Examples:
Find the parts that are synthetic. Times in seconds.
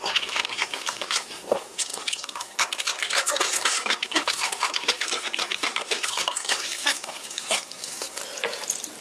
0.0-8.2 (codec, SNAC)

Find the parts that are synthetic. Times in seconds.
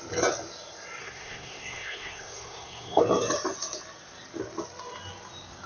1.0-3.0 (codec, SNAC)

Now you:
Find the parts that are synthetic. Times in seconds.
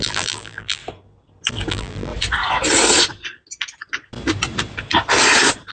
0.0-0.8 (vocoder, BigVGAN v2); 1.7-2.1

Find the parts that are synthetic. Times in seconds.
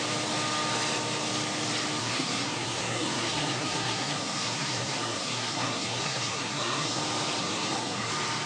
2.0-7.0 (codec, SNAC); 7.4-8.1